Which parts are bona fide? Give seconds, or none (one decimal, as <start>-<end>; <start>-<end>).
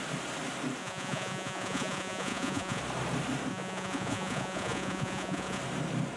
0.0-0.8; 2.8-3.5; 5.6-6.2